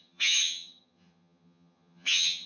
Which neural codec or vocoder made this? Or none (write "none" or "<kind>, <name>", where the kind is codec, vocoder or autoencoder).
vocoder, HiFi-GAN